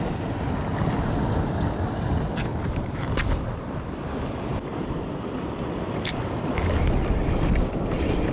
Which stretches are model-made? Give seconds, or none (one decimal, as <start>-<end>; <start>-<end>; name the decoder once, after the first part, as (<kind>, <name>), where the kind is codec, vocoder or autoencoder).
2.5-3.1 (vocoder, BigVGAN v2)